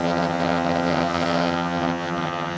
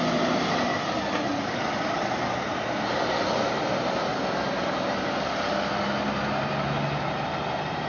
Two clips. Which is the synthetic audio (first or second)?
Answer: first